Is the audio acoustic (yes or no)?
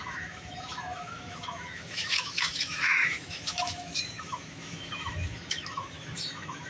no